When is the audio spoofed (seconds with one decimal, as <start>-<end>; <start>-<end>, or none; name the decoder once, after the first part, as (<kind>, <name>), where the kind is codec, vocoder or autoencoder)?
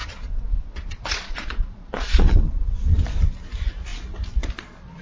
0.0-3.0 (vocoder, Vocos)